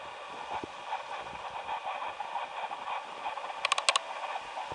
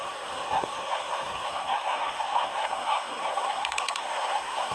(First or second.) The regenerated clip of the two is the second